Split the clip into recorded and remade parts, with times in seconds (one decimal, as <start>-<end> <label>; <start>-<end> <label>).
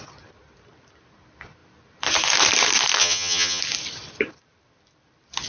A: 0.0-3.0 recorded; 3.0-3.6 remade; 3.6-5.5 recorded